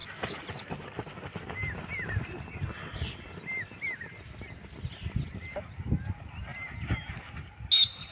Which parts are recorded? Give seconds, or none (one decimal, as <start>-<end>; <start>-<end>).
0.6-8.1